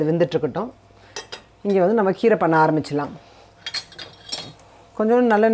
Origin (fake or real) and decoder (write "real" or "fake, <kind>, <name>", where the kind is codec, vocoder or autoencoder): real